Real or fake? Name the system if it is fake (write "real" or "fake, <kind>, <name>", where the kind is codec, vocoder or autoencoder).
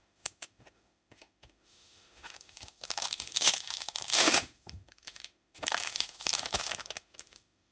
fake, autoencoder, DAC-VAE